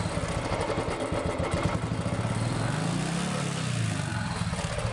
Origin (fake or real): real